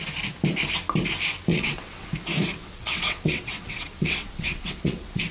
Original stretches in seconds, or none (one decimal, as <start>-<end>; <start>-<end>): 0.0-1.5; 2.1-2.6